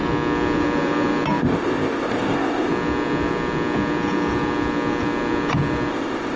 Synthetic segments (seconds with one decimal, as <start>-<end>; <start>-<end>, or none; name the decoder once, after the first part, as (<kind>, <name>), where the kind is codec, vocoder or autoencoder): 1.4-2.7 (codec, ZipCodec); 5.9-6.4